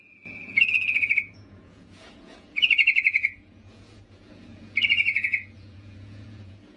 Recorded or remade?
remade